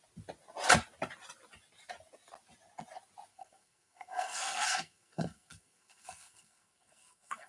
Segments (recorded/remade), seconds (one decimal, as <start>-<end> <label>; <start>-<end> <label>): 0.0-3.3 recorded; 3.3-7.5 remade